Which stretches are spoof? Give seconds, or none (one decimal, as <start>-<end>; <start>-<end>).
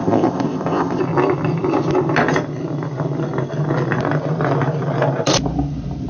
0.0-1.0